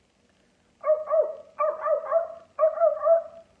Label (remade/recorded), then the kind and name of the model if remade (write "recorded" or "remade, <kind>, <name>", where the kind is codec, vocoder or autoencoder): recorded